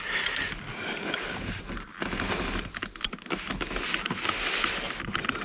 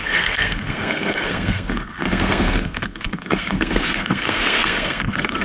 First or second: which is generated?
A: second